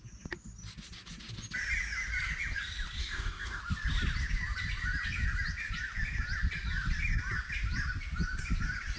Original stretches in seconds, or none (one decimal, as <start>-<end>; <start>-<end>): 0.0-3.0; 3.6-9.0